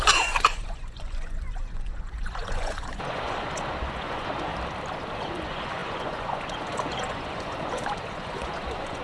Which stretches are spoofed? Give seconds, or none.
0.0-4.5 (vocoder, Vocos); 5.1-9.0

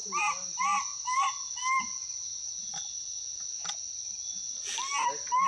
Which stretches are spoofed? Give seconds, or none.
none

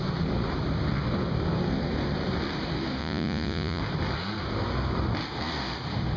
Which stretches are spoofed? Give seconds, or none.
3.0-3.8 (vocoder, Vocos)

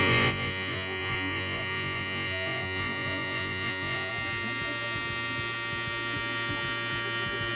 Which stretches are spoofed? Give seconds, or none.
0.0-4.1 (vocoder, Vocos)